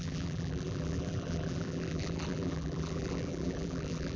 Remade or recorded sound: remade